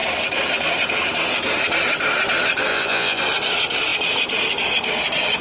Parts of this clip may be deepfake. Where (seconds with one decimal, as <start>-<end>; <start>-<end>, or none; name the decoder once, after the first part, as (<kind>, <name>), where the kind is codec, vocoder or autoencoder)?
2.7-3.2 (vocoder, Vocos)